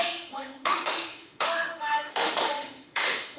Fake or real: fake